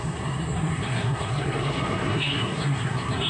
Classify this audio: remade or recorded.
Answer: remade